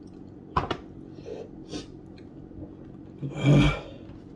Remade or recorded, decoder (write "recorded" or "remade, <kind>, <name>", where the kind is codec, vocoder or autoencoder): recorded